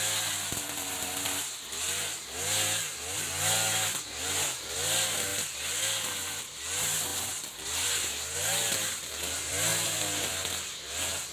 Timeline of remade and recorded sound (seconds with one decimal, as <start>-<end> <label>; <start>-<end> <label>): 0.0-7.1 recorded; 7.1-8.1 remade; 8.1-9.7 recorded; 9.7-10.3 remade; 10.3-11.3 recorded